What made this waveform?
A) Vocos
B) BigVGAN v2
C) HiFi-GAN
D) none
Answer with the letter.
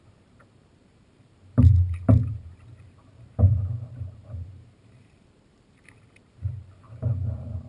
B